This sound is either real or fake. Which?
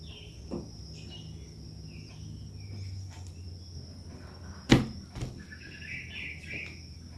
real